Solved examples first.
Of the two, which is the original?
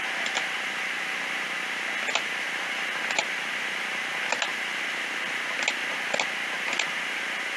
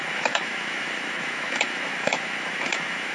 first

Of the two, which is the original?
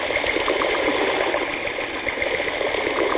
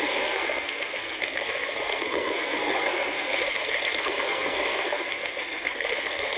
first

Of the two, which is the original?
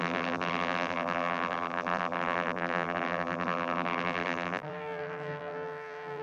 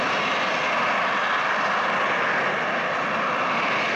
second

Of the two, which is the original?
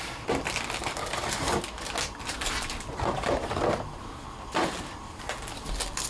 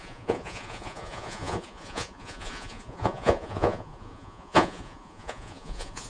first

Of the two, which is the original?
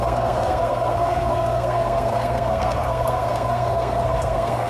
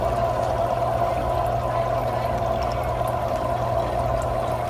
second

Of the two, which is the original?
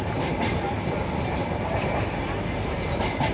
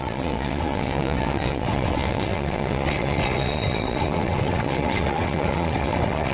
first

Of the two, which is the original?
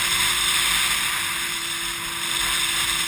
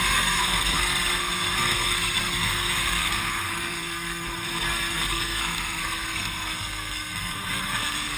first